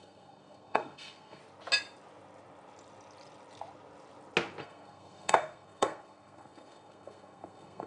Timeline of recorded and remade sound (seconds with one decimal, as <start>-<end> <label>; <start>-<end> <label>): 0.0-1.4 remade; 1.4-4.6 recorded; 4.6-7.9 remade